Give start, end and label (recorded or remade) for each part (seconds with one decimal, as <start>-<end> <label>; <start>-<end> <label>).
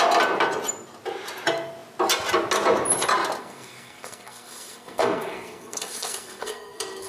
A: 0.0-3.4 recorded; 3.4-7.1 remade